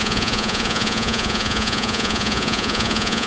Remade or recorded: remade